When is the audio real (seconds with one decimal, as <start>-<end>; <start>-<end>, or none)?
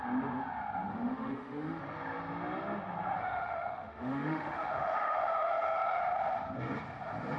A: 0.0-0.9; 1.8-3.2; 6.0-7.4